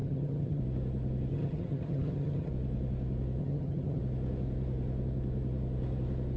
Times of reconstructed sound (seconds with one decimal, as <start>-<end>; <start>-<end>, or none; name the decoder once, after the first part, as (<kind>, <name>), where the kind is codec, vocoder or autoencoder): 0.0-0.6 (vocoder, HiFi-GAN); 1.3-2.5; 3.4-4.0